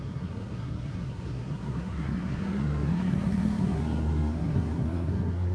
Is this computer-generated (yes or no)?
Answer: yes